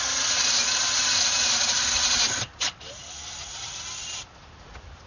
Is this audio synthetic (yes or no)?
no